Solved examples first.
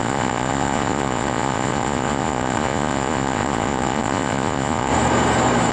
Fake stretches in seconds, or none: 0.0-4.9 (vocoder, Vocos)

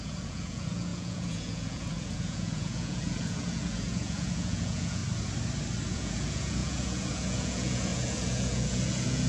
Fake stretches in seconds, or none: 0.0-5.0 (vocoder, Vocos); 5.9-9.3

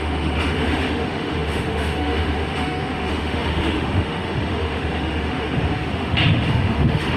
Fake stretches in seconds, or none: 0.0-7.2 (autoencoder, DAC-VAE)

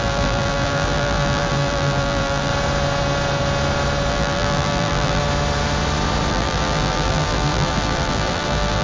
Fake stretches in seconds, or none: 0.0-2.5 (vocoder, BigVGAN v2); 4.1-5.2; 6.3-8.8